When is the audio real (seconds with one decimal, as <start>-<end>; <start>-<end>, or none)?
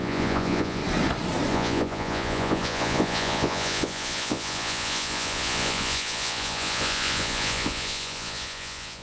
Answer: 0.8-1.5